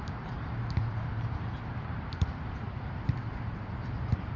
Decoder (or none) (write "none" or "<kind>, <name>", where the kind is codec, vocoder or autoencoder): vocoder, BigVGAN v2